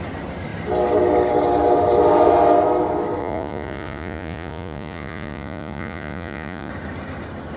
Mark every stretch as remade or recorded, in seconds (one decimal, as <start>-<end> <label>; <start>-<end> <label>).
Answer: 0.0-3.2 recorded; 3.2-6.7 remade; 6.7-7.6 recorded